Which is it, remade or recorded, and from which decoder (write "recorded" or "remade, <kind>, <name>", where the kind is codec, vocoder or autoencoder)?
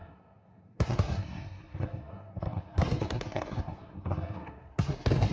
remade, codec, SNAC